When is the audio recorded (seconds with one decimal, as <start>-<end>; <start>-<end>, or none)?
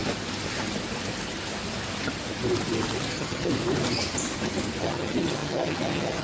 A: 0.0-3.1; 3.5-4.8